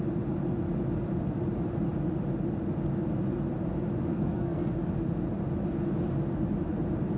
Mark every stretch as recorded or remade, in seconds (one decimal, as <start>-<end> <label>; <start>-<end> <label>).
0.0-4.1 recorded; 4.1-4.7 remade; 4.7-7.2 recorded